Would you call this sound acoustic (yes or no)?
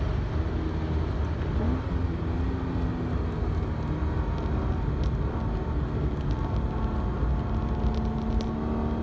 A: yes